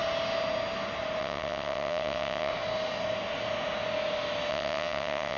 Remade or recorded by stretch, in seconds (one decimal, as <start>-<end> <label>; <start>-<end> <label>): 0.0-1.2 recorded; 1.2-2.5 remade; 2.5-4.5 recorded; 4.5-5.4 remade